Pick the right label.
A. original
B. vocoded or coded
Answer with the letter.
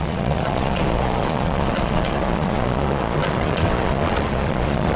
B